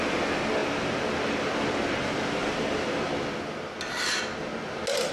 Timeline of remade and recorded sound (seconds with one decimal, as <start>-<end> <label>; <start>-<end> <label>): 0.0-5.1 recorded

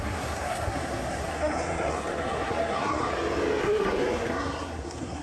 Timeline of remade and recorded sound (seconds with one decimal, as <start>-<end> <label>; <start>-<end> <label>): 0.0-3.1 remade; 3.1-3.6 recorded; 3.6-5.2 remade

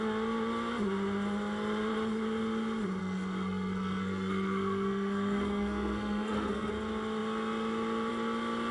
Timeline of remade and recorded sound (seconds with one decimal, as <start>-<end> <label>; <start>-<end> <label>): 0.0-3.0 recorded; 3.0-6.7 remade; 6.7-8.7 recorded